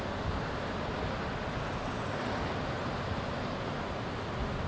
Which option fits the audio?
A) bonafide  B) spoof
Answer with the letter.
A